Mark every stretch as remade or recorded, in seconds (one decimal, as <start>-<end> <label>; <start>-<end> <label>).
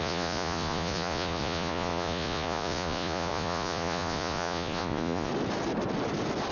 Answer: 0.0-5.3 remade; 5.3-6.5 recorded